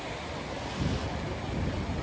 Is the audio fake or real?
real